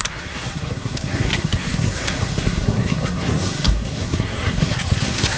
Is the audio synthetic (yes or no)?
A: yes